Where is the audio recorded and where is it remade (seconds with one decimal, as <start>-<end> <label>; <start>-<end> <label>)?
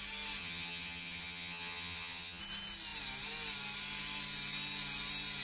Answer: 0.0-0.4 recorded; 0.4-2.4 remade; 2.4-5.4 recorded